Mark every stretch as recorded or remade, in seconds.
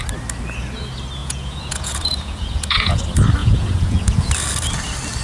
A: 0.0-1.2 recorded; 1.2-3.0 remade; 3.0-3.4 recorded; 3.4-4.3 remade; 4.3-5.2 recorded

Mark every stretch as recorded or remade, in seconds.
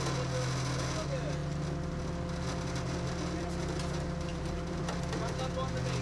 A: 0.0-4.3 recorded; 4.3-4.8 remade; 4.8-6.0 recorded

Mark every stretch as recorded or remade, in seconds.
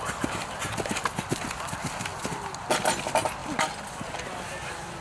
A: 0.0-5.0 recorded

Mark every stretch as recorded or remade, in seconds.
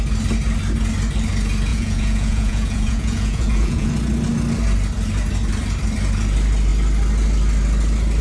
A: 0.0-1.7 recorded; 1.7-3.9 remade; 3.9-8.2 recorded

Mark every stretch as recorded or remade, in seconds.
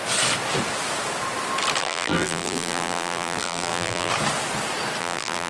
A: 0.0-1.8 recorded; 1.8-4.1 remade; 4.1-5.0 recorded; 5.0-5.5 remade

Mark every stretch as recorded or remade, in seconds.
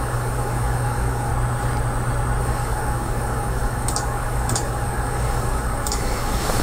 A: 0.0-1.3 remade; 1.3-2.4 recorded; 2.4-6.6 remade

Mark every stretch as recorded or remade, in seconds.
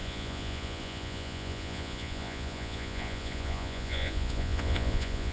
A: 0.0-5.3 remade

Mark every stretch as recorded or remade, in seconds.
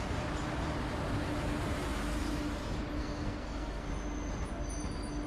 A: 0.0-3.0 recorded; 3.0-3.9 remade; 3.9-5.3 recorded